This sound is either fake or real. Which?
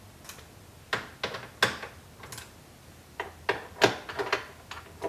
real